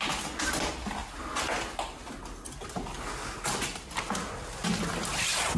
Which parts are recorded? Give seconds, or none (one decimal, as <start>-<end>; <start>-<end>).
0.0-5.6